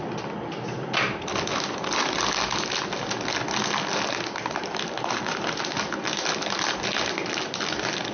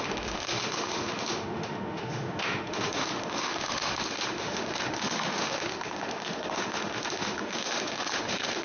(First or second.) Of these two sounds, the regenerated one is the second